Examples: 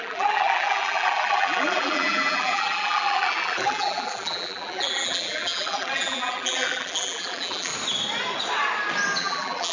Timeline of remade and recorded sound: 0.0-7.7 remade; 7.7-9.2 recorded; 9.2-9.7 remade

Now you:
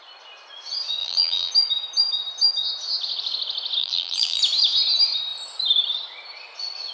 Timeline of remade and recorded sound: 0.0-1.0 recorded; 1.0-1.5 remade; 1.5-3.8 recorded; 3.8-4.4 remade; 4.4-6.9 recorded

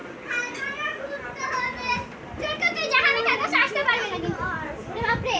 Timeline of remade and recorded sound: 0.0-3.2 recorded; 3.2-3.8 remade; 3.8-5.4 recorded

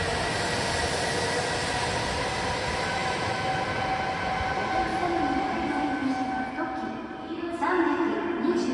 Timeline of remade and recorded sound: 0.0-4.9 recorded; 4.9-6.5 remade; 6.5-8.7 recorded